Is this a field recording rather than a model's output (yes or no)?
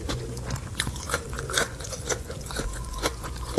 no